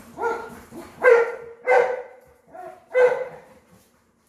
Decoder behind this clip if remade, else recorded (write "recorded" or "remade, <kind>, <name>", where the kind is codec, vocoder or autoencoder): remade, vocoder, BigVGAN v2